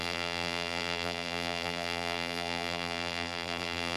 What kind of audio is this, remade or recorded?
remade